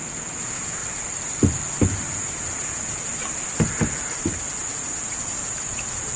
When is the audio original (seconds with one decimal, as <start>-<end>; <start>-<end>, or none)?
0.8-1.8; 3.2-4.7